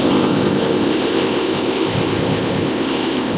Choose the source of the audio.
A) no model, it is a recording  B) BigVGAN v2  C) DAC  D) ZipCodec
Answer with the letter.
D